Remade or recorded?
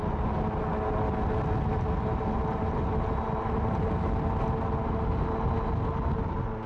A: recorded